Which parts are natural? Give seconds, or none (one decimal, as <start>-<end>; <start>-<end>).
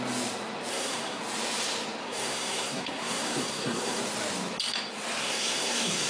0.0-0.7; 1.2-2.0; 4.0-5.2